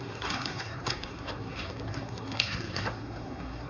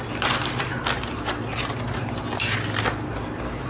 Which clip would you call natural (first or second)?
second